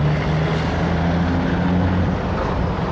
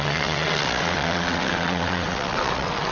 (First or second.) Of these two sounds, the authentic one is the first